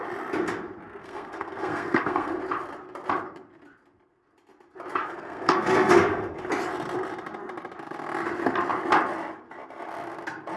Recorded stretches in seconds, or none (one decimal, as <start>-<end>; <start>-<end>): 0.0-1.0; 2.4-5.0; 6.4-10.6